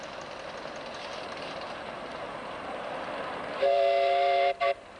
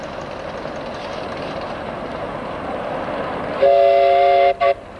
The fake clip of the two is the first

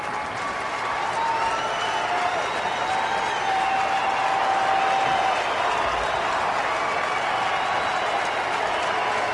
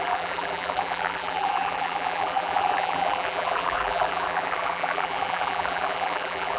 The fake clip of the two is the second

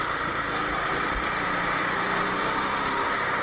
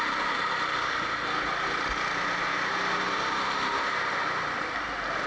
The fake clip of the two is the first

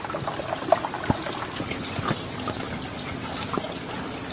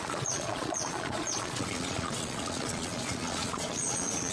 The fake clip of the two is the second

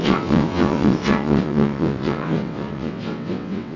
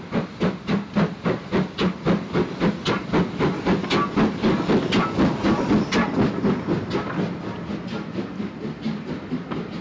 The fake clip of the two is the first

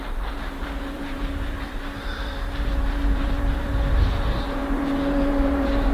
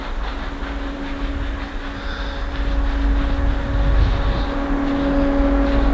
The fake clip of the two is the first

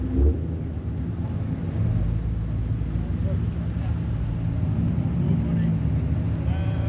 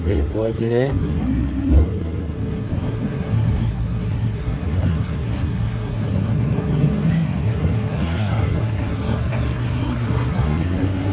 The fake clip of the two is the second